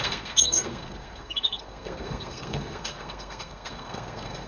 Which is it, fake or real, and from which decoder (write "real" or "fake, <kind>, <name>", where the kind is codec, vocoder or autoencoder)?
fake, codec, SNAC